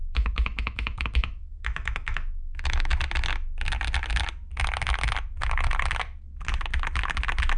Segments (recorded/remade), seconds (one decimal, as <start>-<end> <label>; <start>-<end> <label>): 0.0-2.9 remade; 2.9-7.6 recorded